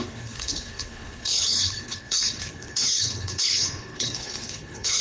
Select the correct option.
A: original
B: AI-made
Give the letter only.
B